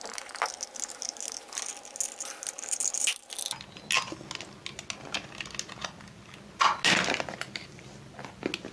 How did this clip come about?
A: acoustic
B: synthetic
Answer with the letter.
A